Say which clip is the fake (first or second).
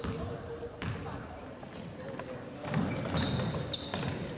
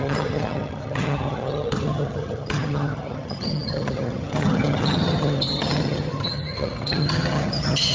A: second